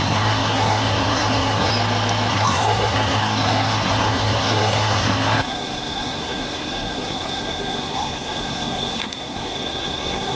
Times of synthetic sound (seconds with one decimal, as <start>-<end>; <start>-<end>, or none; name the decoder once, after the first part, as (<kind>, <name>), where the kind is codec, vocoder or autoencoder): 0.0-1.7 (codec, SNAC); 2.3-10.3